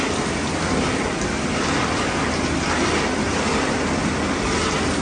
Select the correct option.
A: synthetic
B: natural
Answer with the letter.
A